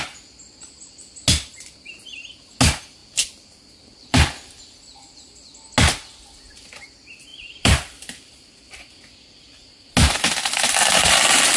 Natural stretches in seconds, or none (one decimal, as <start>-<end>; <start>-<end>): 0.0-3.0; 4.6-7.3; 8.3-11.6

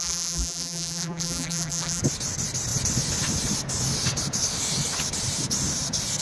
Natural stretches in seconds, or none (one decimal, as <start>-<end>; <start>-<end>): 2.0-6.2

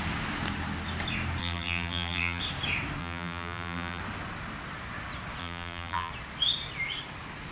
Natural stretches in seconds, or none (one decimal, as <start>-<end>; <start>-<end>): 0.0-1.4; 2.4-3.0; 4.0-5.4; 6.1-7.5